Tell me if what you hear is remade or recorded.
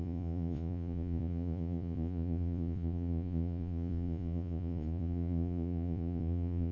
remade